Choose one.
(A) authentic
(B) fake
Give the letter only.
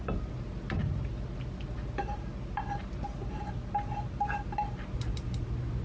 A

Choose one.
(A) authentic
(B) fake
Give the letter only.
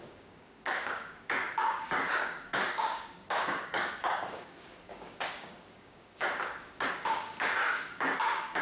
B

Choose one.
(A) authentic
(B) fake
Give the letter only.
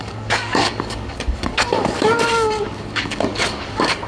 B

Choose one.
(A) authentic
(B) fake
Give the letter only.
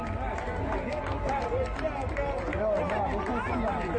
A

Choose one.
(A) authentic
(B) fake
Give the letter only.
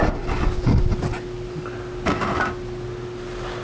A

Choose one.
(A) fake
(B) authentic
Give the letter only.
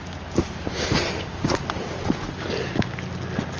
B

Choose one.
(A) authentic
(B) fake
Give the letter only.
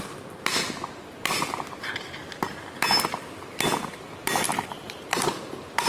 A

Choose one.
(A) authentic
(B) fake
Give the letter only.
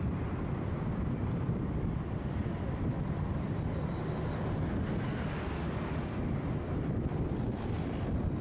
A